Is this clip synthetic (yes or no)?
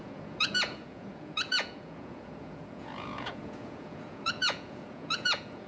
yes